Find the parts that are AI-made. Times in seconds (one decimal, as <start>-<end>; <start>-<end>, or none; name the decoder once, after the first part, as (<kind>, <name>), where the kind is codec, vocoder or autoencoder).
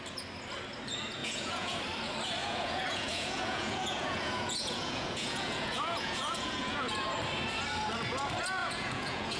1.2-1.8 (vocoder, Vocos); 2.4-6.9; 8.6-9.4